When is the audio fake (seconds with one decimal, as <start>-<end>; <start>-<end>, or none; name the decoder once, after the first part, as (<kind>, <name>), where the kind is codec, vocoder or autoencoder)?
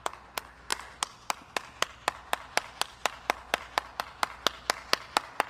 0.7-4.0 (vocoder, BigVGAN v2)